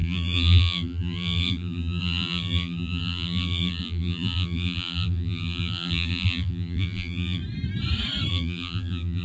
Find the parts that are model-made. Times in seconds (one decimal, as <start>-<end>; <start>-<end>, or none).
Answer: 0.0-7.4; 8.3-9.2